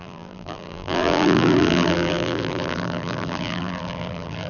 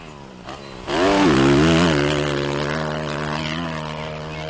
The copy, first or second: first